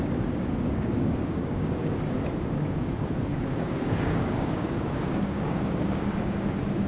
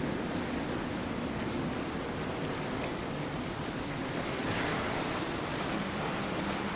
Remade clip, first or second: first